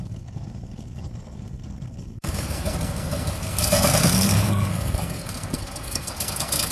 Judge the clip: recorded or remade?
remade